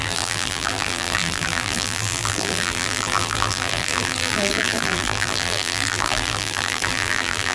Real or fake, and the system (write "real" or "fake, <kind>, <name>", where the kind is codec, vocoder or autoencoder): fake, vocoder, BigVGAN v2